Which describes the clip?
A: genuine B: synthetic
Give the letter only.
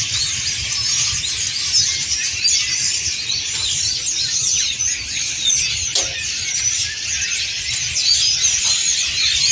A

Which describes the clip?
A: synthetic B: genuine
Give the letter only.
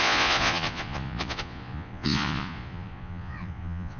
A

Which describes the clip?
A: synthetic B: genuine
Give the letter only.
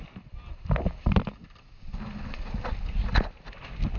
B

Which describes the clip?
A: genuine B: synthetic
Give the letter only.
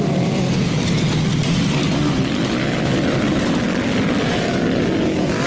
A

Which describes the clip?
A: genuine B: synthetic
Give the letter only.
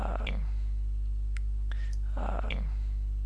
A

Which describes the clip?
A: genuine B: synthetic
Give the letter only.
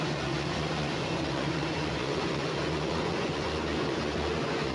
B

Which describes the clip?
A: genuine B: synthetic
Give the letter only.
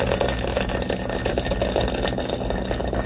A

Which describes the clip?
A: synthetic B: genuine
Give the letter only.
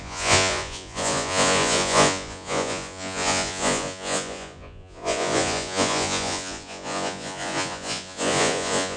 A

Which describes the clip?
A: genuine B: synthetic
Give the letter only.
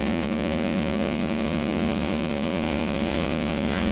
B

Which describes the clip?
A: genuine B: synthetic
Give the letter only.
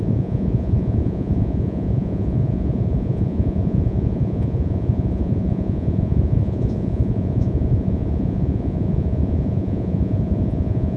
B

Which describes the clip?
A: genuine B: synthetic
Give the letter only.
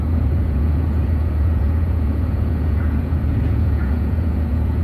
B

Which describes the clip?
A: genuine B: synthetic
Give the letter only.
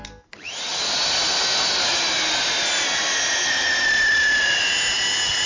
A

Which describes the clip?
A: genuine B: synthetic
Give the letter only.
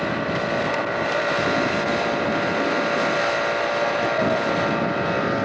A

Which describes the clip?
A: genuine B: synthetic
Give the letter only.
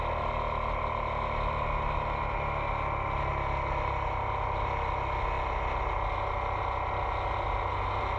A